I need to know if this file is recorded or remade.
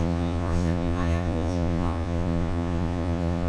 remade